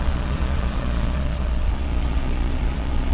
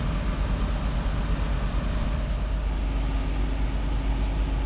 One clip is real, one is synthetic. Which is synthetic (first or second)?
first